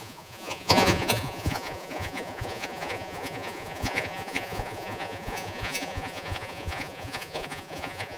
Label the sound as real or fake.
fake